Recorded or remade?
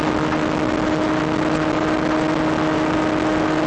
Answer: recorded